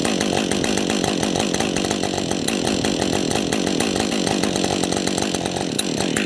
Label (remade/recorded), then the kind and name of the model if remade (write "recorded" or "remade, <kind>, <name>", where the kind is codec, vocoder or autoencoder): recorded